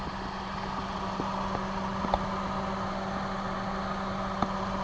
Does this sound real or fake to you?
real